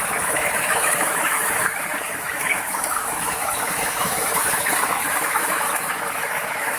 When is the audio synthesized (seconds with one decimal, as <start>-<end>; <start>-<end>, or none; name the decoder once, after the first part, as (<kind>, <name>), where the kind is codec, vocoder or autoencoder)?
0.0-6.8 (autoencoder, DAC-VAE)